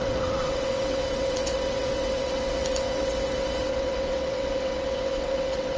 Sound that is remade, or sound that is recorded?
remade